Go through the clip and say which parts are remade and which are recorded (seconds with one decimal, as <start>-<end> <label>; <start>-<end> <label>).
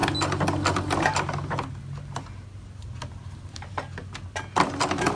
0.0-5.2 recorded